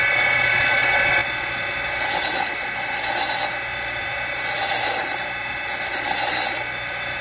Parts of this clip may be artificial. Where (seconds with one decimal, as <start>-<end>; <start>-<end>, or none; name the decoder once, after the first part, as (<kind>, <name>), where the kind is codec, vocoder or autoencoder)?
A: none